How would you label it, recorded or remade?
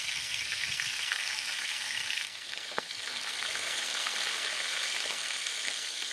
remade